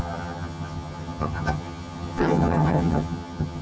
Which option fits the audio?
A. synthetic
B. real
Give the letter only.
A